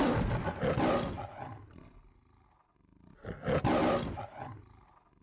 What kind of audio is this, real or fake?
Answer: real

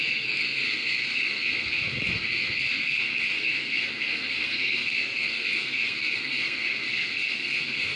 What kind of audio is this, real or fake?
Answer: fake